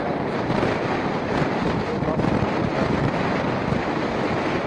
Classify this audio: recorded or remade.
recorded